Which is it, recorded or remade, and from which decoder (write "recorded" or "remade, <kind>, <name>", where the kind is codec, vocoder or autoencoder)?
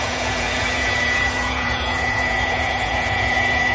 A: remade, vocoder, Vocos